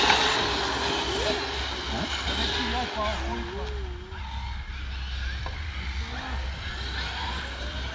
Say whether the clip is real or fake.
real